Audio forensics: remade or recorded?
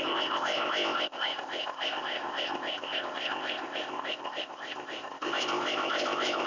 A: remade